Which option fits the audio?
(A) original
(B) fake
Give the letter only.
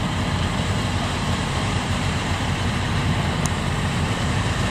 B